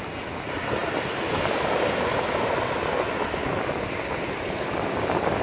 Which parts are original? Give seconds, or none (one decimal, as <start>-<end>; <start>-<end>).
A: 0.0-5.4